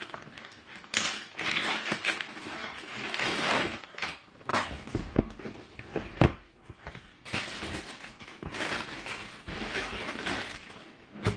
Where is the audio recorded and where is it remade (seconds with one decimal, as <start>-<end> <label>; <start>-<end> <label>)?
0.0-11.4 remade

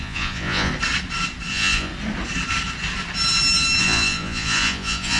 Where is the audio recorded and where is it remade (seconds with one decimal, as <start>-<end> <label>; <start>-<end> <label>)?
0.0-0.7 remade; 0.7-1.5 recorded; 1.5-1.9 remade; 1.9-3.8 recorded; 3.8-5.2 remade

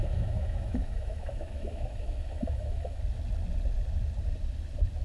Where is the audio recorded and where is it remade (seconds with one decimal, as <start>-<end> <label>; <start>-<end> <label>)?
0.0-3.0 remade; 3.0-5.0 recorded

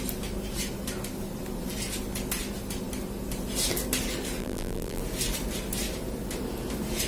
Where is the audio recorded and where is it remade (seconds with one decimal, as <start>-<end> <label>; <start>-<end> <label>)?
0.0-4.4 recorded; 4.4-5.0 remade; 5.0-7.1 recorded

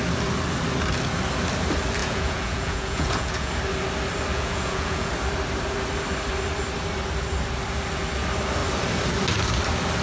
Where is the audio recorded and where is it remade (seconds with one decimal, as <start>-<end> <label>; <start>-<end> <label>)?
0.0-2.0 recorded; 2.0-3.5 remade; 3.5-4.3 recorded; 4.3-5.1 remade; 5.1-10.0 recorded

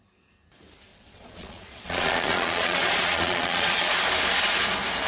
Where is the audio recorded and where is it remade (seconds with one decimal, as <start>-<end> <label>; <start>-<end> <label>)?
0.0-0.9 recorded; 0.9-4.0 remade; 4.0-5.1 recorded

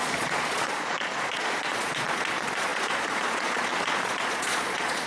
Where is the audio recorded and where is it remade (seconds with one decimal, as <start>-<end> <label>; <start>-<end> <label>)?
0.0-5.1 remade

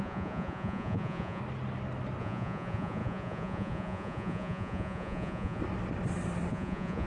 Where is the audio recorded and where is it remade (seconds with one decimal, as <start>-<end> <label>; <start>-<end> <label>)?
0.0-1.4 remade; 1.4-2.2 recorded; 2.2-5.6 remade; 5.6-6.5 recorded; 6.5-7.1 remade